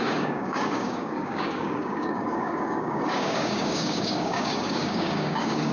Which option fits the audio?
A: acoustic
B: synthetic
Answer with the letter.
B